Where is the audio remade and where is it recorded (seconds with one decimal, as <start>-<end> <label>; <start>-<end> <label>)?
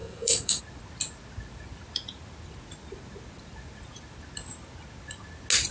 0.0-0.6 remade; 0.6-5.7 recorded